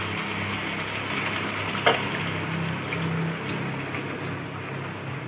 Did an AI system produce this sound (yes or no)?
no